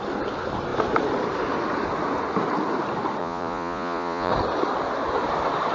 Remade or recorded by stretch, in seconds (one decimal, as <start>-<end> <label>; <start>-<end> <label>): 0.0-3.2 recorded; 3.2-4.3 remade; 4.3-5.7 recorded